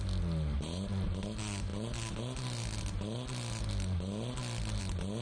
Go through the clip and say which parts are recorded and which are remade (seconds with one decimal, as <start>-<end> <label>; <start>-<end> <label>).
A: 0.0-5.2 recorded